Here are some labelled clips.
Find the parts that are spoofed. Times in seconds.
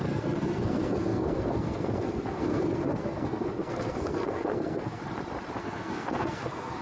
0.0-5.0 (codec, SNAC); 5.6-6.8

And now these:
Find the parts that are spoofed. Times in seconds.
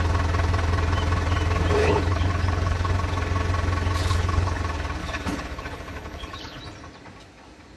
1.8-2.9 (codec, HILCodec); 4.0-4.6; 5.0-6.6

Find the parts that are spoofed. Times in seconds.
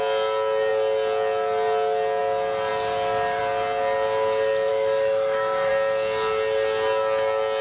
4.7-5.7 (autoencoder, DAC-VAE)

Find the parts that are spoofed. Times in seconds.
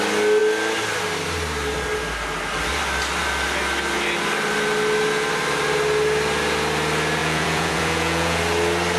7.2-8.4 (vocoder, Vocos)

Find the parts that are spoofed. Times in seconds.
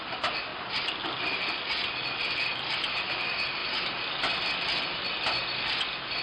none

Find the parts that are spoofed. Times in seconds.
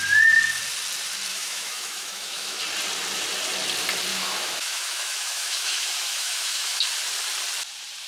1.3-2.6 (autoencoder, DAC-VAE); 4.1-6.9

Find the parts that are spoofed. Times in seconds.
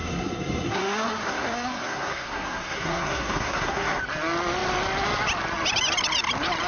0.0-4.0 (codec, SNAC)